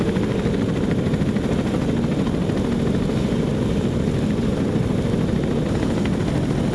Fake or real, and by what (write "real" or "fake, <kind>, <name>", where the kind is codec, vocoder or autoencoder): real